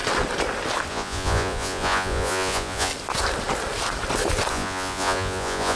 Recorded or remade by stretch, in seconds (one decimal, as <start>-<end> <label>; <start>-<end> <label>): 0.0-0.9 recorded; 0.9-2.9 remade; 2.9-4.5 recorded; 4.5-5.8 remade